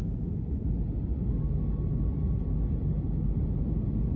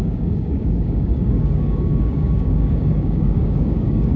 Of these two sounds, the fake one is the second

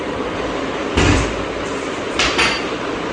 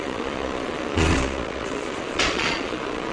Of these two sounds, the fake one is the second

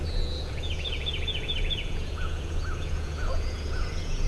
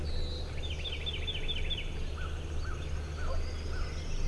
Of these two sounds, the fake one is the first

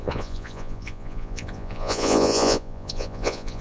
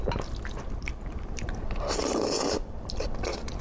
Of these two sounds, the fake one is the first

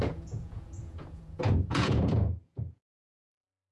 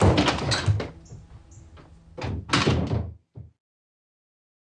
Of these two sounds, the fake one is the first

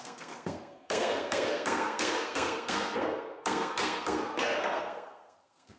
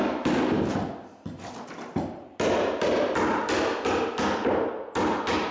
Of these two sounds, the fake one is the first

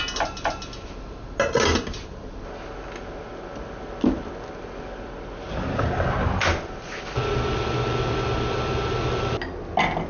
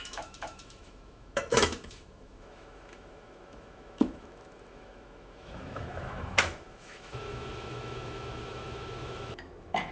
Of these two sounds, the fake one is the second